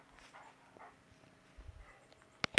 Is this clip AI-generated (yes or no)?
no